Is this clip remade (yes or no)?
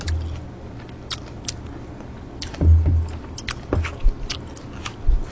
no